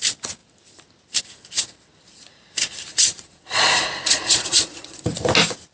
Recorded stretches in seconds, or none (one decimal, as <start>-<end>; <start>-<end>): 0.0-2.9; 5.0-5.7